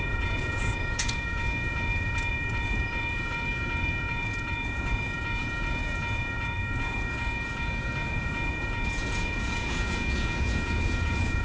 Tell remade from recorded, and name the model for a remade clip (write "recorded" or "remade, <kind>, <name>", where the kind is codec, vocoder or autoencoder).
remade, vocoder, Vocos